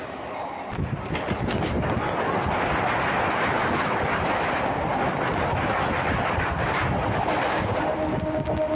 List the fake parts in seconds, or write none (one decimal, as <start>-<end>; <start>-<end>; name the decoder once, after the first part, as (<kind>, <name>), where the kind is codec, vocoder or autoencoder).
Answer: 3.6-6.4 (vocoder, BigVGAN v2)